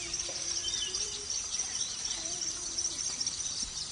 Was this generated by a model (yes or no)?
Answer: yes